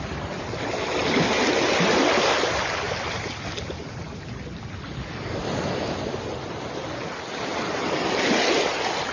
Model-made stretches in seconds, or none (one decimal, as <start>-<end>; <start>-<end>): none